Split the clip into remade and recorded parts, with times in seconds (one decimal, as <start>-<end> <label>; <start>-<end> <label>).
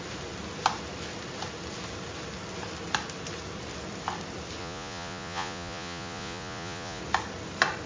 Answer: 0.0-4.6 recorded; 4.6-7.0 remade; 7.0-7.9 recorded